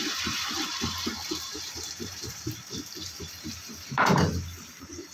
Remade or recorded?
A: remade